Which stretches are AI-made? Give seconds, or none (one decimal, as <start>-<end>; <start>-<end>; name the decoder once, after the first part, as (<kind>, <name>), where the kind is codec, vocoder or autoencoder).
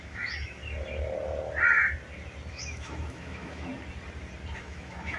0.0-0.6 (autoencoder, DAC-VAE); 2.5-3.7; 4.6-5.2